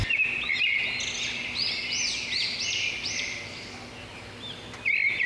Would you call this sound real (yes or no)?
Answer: yes